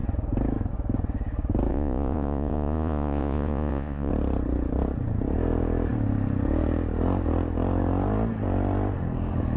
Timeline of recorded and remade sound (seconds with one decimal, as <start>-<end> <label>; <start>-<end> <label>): 0.0-1.7 recorded; 1.7-4.1 remade; 4.1-9.6 recorded